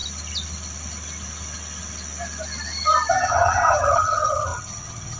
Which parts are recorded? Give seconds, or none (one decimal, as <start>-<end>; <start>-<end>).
0.0-3.1